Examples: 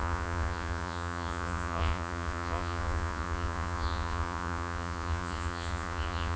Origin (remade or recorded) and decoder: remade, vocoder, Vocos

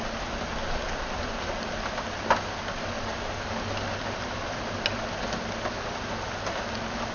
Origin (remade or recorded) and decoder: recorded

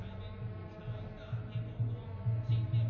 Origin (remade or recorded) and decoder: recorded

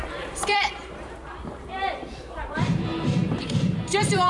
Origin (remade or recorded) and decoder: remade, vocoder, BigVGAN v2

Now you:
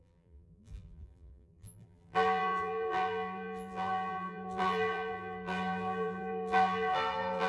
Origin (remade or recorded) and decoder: remade, vocoder, BigVGAN v2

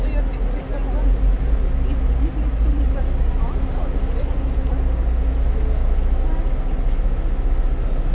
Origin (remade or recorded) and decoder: recorded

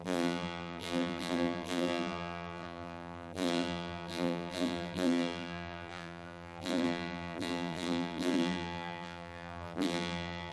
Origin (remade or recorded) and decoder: remade, vocoder, BigVGAN v2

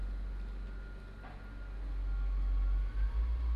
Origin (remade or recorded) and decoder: recorded